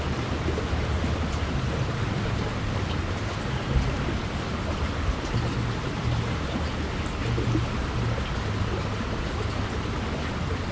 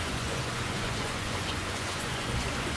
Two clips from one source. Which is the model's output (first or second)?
second